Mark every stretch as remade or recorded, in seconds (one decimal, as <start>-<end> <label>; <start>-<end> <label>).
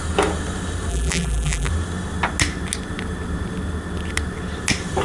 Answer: 0.0-0.9 recorded; 0.9-1.7 remade; 1.7-5.0 recorded